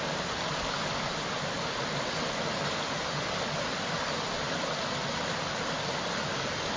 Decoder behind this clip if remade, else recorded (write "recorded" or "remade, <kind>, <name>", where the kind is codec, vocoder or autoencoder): recorded